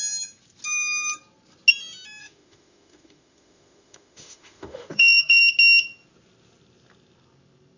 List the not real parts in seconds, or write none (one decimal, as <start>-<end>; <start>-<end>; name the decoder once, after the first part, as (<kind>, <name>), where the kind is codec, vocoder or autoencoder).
2.2-5.4 (autoencoder, DAC-VAE)

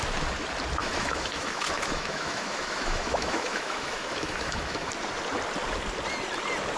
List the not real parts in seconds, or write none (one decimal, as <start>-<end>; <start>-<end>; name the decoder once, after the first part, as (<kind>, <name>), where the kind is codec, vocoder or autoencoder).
0.8-4.9 (autoencoder, DAC-VAE)

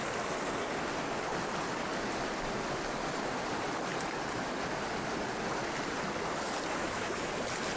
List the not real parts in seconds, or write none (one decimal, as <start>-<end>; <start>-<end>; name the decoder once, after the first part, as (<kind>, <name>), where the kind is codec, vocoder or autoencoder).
6.8-7.3 (autoencoder, DAC-VAE)

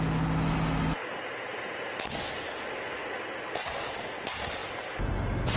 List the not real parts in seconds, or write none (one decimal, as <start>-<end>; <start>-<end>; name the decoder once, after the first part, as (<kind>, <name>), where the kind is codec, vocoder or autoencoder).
none